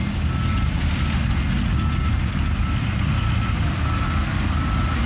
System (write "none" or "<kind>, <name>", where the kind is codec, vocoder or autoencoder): none